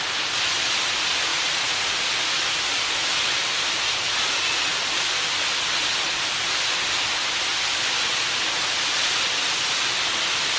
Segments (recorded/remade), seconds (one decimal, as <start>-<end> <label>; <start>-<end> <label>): 0.0-1.3 recorded; 1.3-1.9 remade; 1.9-10.6 recorded

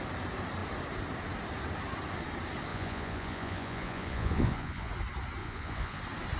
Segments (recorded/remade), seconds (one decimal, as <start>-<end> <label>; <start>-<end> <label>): 0.0-2.7 recorded; 2.7-4.9 remade; 4.9-5.4 recorded; 5.4-6.0 remade; 6.0-6.4 recorded

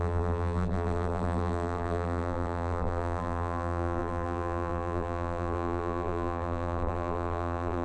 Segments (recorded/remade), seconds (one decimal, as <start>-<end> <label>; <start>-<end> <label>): 0.0-7.8 remade

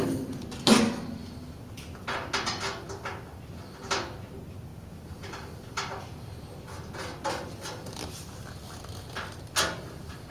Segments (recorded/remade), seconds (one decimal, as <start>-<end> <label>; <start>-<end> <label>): 0.0-10.3 recorded

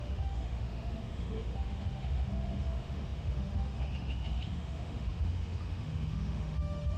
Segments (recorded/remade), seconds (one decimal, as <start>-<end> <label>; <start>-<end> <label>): 0.0-7.0 remade

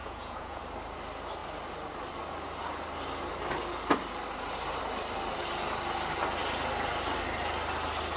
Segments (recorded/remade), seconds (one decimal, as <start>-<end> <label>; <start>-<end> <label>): 0.0-0.6 remade; 0.6-8.2 recorded